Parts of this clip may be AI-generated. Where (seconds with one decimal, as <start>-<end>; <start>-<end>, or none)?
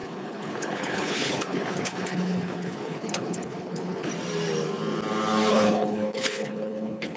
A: 0.0-4.1; 5.5-7.2